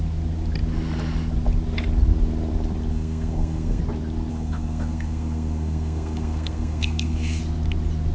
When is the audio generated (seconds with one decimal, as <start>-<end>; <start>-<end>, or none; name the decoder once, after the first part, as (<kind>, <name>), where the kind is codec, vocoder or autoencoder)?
2.9-3.8 (codec, SNAC); 4.3-7.4

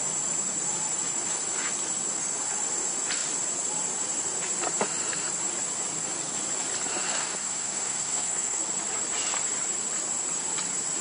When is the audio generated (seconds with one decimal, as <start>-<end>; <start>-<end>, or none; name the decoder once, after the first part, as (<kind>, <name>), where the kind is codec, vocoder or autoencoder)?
7.1-8.6 (codec, SNAC)

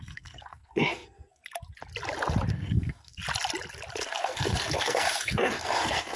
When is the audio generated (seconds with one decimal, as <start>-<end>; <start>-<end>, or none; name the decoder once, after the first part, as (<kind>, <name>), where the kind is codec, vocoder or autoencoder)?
0.0-1.4 (codec, SNAC); 2.5-3.2; 4.0-6.2

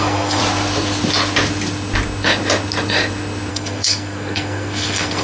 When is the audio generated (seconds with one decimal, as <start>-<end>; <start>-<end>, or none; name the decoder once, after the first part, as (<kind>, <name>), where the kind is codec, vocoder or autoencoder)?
0.0-0.4 (codec, SNAC); 3.5-5.2

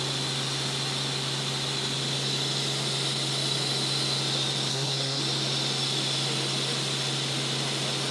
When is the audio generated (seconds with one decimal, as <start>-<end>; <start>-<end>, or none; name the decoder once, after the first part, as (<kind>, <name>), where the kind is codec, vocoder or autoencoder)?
4.7-5.2 (codec, SNAC)

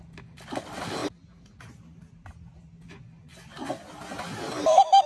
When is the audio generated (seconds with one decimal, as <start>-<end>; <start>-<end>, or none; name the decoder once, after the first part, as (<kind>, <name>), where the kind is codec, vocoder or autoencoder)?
none

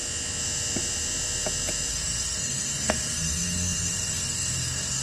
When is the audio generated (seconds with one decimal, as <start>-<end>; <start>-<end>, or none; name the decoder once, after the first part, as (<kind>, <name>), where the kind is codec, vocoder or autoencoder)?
1.9-5.0 (codec, SNAC)

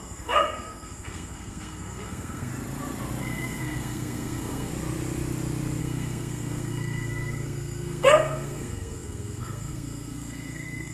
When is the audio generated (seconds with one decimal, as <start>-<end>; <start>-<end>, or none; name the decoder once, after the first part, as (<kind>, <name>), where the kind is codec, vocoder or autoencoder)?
0.0-2.5 (codec, SNAC); 3.2-4.7; 5.8-10.9